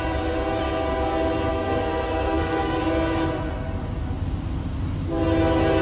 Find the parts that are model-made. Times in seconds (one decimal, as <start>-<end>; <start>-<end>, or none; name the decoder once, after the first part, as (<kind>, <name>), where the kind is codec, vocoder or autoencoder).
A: 1.5-2.8 (codec, SNAC)